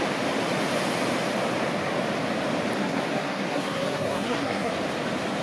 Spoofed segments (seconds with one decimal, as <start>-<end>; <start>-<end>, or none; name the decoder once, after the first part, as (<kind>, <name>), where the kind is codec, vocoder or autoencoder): 2.8-4.7 (codec, SNAC)